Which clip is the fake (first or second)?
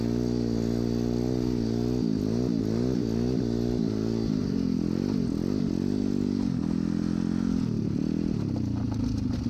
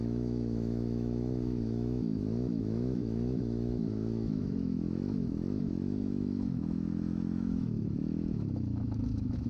second